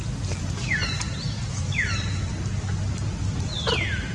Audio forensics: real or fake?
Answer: real